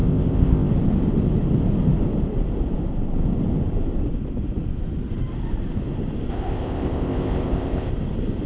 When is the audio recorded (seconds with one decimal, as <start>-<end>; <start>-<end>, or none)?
0.7-6.3; 7.9-8.5